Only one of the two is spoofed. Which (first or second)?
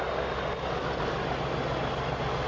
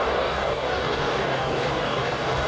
second